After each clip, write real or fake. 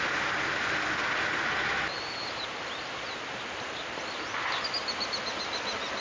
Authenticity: real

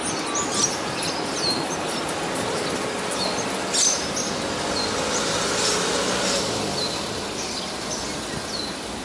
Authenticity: real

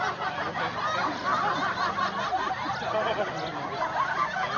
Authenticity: real